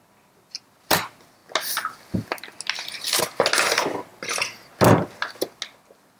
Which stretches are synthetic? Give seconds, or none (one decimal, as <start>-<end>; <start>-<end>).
none